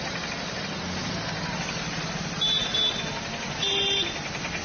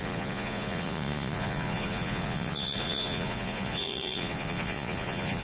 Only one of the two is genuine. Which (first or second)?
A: first